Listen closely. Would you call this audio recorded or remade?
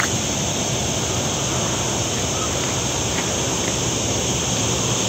recorded